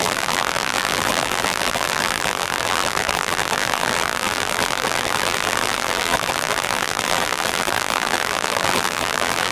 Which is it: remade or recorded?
remade